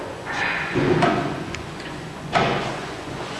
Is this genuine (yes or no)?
no